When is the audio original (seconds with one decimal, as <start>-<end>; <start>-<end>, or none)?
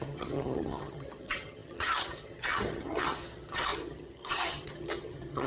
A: none